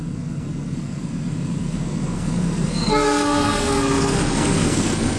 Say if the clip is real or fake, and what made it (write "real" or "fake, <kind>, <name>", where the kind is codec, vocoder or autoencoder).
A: fake, codec, SNAC